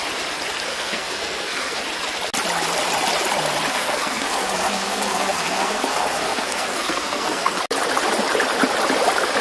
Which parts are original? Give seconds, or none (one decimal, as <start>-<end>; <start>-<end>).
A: 0.0-0.7; 1.8-3.7; 7.6-9.4